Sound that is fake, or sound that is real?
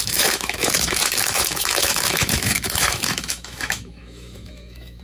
fake